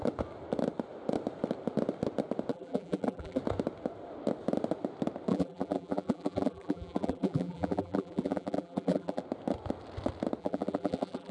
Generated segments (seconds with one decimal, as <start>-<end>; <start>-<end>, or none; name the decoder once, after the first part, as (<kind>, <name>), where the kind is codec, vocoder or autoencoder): 2.5-3.4 (vocoder, BigVGAN v2); 5.3-9.2; 10.4-11.3

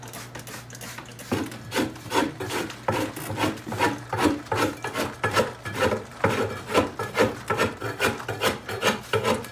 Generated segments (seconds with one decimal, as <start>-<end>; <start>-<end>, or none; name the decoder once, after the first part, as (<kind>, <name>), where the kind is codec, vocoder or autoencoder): none

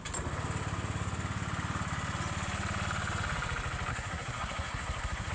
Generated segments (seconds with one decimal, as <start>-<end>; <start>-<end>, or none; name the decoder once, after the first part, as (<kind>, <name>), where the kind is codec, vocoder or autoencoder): 3.9-5.3 (codec, SNAC)

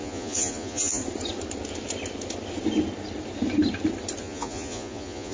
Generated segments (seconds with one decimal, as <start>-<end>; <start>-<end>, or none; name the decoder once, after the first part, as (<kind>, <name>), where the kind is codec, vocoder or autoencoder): 0.0-1.0 (vocoder, Vocos); 4.2-5.3